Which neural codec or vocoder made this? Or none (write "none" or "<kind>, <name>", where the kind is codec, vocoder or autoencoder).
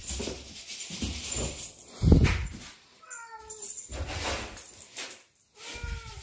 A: none